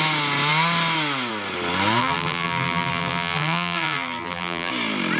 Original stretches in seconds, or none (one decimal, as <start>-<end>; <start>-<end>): 0.0-2.0; 4.7-5.2